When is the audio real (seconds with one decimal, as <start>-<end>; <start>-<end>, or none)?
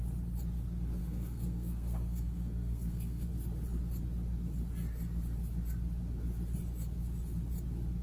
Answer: 0.0-1.0; 3.3-8.0